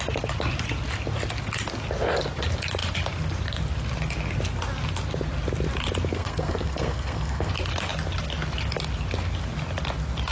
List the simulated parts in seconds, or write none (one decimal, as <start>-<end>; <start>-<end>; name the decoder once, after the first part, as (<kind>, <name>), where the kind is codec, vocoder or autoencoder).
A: 6.1-7.5 (codec, SNAC)